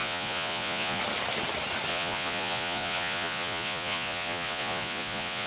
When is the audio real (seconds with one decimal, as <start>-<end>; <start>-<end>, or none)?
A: 1.0-1.9